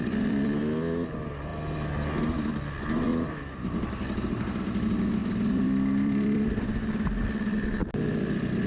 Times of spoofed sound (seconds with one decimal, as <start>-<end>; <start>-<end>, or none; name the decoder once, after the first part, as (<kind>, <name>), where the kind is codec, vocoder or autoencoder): 0.0-0.6 (vocoder, BigVGAN v2); 3.1-3.8; 5.2-7.2